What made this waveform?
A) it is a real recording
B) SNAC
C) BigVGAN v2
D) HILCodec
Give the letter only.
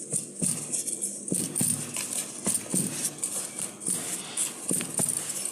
A